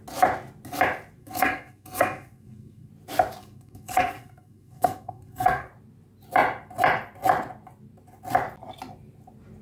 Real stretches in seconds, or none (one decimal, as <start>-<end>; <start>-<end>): 0.0-1.2; 2.9-3.4; 5.7-9.6